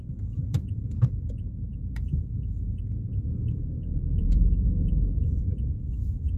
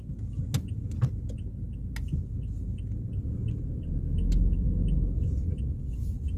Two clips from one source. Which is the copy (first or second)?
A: first